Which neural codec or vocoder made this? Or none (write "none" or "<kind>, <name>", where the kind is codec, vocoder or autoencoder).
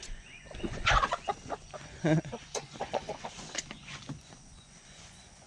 vocoder, Vocos